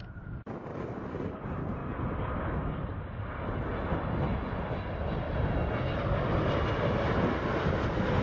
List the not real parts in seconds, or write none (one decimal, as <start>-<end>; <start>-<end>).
none